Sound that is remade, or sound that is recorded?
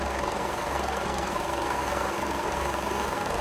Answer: remade